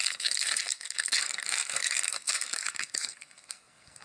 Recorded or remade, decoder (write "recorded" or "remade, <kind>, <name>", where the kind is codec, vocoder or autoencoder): remade, codec, SNAC